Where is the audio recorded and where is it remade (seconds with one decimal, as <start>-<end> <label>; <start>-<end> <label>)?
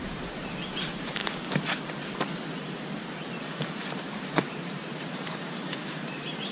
0.0-1.2 remade; 1.2-3.7 recorded; 3.7-6.5 remade